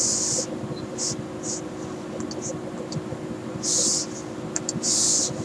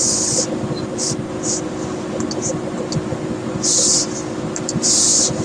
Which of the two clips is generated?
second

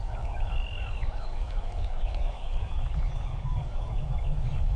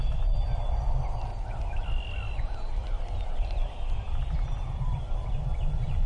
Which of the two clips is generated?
first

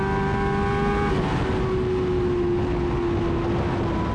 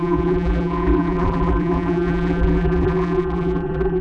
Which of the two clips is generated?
second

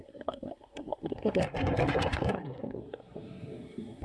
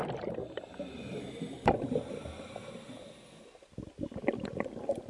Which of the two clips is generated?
first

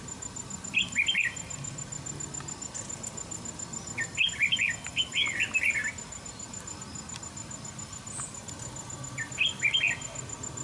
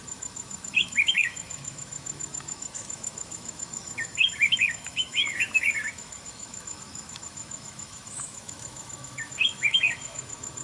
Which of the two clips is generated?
second